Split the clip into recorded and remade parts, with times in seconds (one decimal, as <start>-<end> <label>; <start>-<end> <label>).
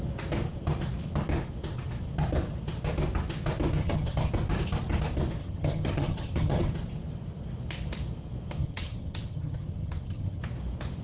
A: 0.0-3.8 recorded; 3.8-4.3 remade; 4.3-5.4 recorded; 5.4-6.7 remade; 6.7-8.6 recorded; 8.6-10.4 remade; 10.4-11.0 recorded